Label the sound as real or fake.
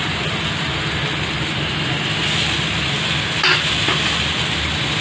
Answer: real